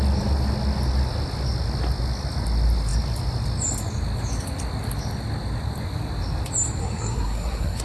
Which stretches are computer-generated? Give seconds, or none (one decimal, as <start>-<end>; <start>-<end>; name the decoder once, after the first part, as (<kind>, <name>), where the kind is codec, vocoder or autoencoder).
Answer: 6.8-7.8 (codec, SNAC)